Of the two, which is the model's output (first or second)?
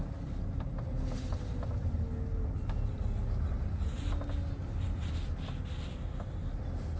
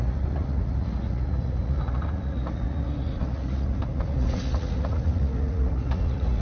second